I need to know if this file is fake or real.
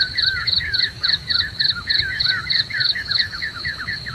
fake